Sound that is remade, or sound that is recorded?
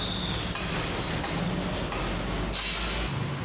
recorded